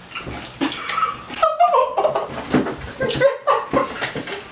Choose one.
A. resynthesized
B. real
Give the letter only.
B